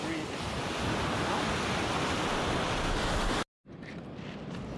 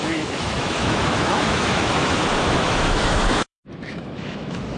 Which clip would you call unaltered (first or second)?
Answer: first